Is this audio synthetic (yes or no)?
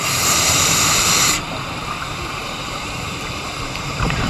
yes